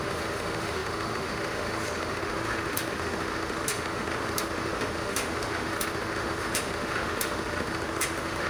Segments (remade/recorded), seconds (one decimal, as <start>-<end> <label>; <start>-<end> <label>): 0.0-8.5 remade